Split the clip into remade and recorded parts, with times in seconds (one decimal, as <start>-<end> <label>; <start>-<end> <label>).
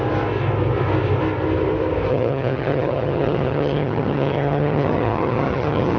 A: 0.0-2.1 recorded; 2.1-6.0 remade